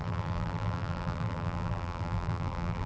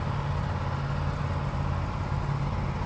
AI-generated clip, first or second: first